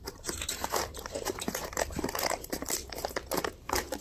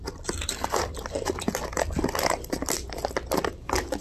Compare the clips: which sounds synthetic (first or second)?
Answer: first